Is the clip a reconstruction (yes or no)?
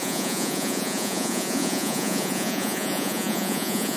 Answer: yes